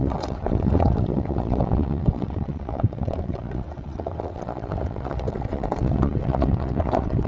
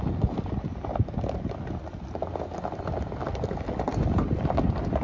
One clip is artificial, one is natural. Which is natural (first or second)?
second